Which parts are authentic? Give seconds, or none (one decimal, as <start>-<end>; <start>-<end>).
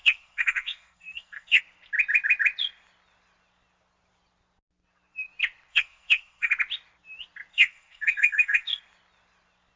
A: 1.6-5.7; 6.5-7.5; 8.8-9.8